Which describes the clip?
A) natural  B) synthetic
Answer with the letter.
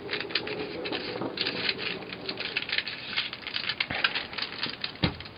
A